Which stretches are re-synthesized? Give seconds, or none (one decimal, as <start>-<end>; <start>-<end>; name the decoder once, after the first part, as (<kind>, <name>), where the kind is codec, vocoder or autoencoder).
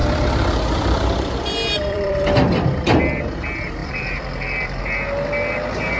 0.0-3.0 (vocoder, BigVGAN v2); 3.8-4.8